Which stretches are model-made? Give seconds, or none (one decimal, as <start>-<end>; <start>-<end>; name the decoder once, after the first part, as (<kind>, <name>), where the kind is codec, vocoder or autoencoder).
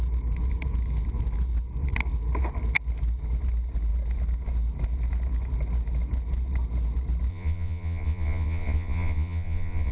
7.3-9.9 (vocoder, Vocos)